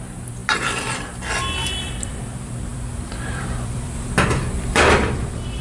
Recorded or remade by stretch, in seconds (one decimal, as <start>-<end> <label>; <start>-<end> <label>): 0.0-5.6 remade